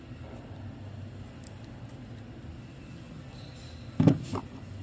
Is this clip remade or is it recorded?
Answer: recorded